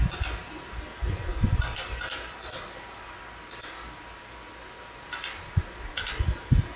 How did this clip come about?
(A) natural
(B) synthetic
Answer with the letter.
A